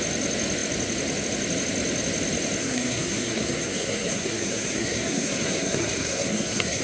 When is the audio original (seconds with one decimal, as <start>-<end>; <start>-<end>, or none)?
0.0-2.6